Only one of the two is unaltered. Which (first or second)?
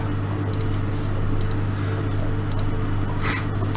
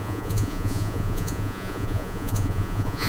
first